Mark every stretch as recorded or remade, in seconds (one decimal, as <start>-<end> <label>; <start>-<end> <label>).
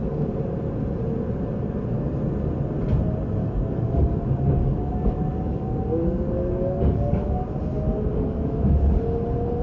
0.0-3.4 recorded; 3.4-7.5 remade; 7.5-8.1 recorded; 8.1-9.0 remade; 9.0-9.6 recorded